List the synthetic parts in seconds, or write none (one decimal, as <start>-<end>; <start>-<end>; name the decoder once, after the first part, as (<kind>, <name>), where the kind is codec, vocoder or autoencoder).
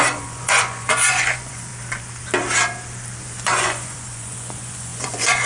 0.0-1.7 (vocoder, Vocos); 3.2-5.5